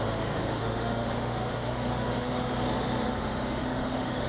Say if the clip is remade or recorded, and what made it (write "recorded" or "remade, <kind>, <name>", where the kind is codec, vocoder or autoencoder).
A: remade, autoencoder, DAC-VAE